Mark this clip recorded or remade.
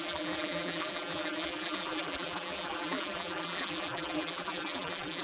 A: remade